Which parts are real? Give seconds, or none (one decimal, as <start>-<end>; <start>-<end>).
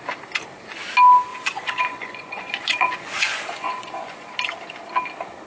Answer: 0.0-1.3; 4.3-5.5